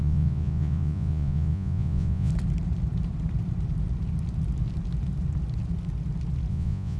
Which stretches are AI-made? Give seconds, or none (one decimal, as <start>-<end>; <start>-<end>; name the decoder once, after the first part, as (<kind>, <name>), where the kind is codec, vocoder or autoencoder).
0.0-2.3 (vocoder, Vocos); 6.5-7.0